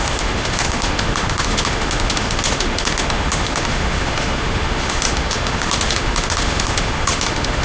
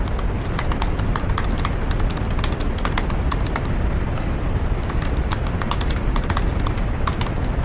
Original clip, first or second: second